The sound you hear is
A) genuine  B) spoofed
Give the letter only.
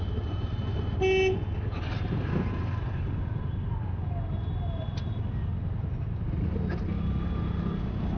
A